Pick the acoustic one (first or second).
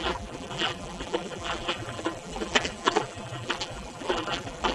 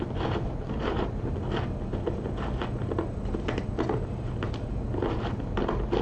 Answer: second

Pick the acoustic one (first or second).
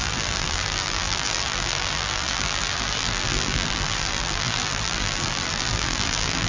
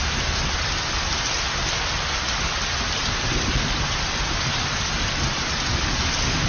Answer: second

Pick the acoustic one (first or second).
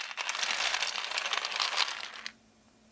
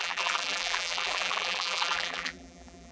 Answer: first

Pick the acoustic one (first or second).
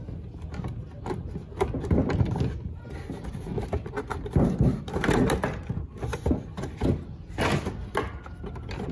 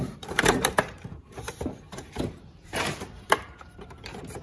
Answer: first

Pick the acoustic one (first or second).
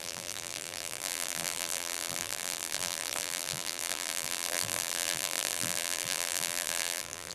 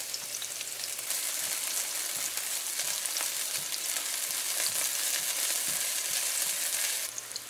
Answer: second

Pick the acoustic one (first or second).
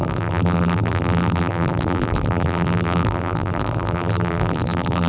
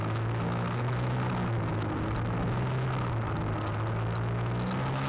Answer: second